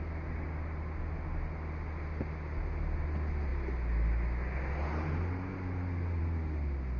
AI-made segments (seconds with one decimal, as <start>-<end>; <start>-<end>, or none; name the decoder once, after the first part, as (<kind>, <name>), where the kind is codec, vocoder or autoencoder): none